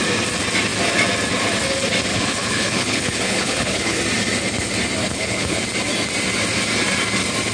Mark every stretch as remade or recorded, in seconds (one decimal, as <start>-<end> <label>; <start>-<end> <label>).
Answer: 0.0-2.1 recorded; 2.1-4.0 remade; 4.0-5.0 recorded; 5.0-5.6 remade; 5.6-7.5 recorded